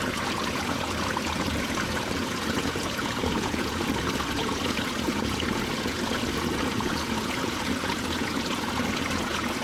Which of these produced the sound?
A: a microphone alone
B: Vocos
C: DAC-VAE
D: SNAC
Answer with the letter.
B